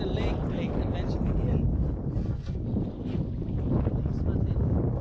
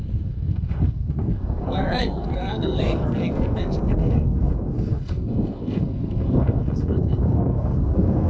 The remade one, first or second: second